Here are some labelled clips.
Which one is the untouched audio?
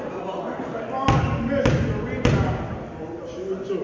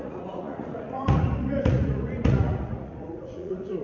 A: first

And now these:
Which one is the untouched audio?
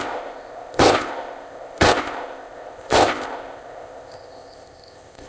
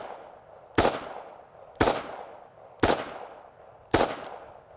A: second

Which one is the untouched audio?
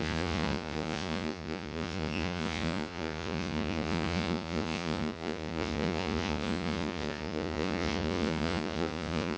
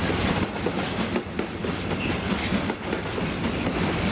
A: second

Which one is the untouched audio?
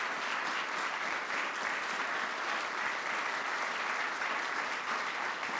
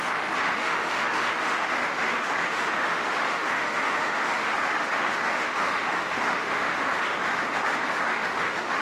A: first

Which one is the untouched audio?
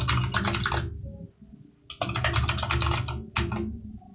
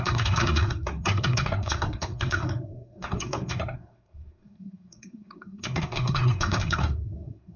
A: first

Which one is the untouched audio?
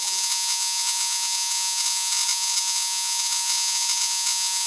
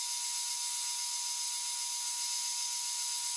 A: second